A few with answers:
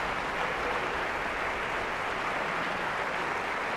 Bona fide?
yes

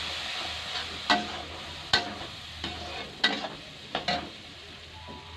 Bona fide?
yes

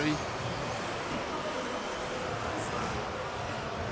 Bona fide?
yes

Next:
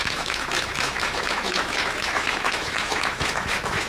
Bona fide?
no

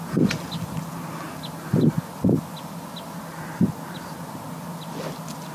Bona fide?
yes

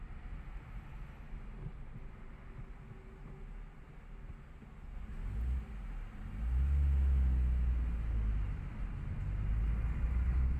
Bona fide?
yes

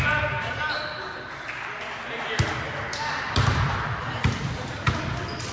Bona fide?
yes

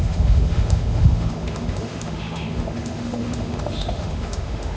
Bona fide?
no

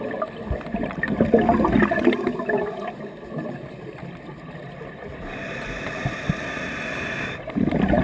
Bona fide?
yes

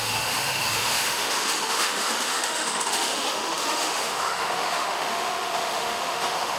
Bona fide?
no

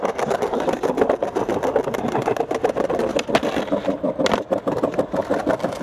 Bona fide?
yes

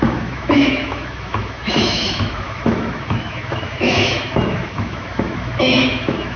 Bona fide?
no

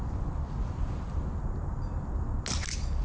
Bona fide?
yes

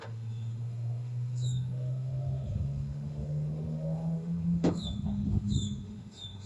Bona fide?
no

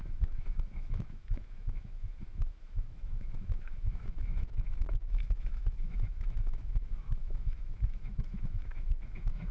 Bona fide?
no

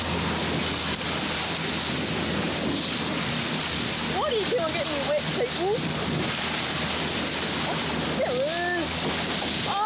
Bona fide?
yes